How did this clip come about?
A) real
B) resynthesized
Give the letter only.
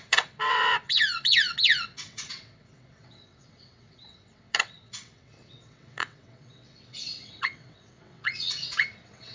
B